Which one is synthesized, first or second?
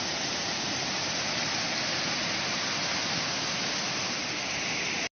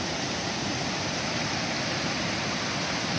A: second